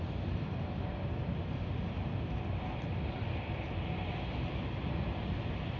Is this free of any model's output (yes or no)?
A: yes